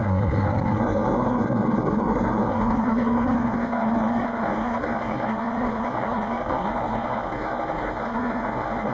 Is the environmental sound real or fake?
fake